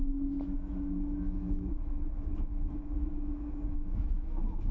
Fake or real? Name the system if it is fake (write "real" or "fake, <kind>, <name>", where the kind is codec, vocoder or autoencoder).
fake, autoencoder, DAC-VAE